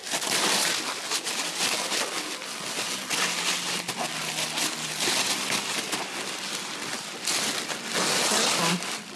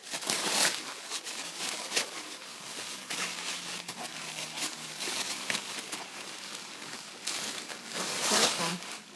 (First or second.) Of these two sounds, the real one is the first